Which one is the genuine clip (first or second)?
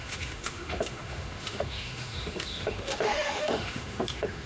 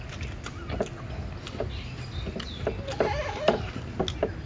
second